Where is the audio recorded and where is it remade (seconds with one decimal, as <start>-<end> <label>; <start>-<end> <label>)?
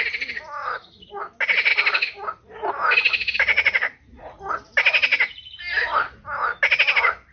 0.0-0.6 recorded; 0.6-1.1 remade; 1.1-3.5 recorded; 3.5-4.4 remade; 4.4-5.1 recorded; 5.1-5.6 remade; 5.6-7.3 recorded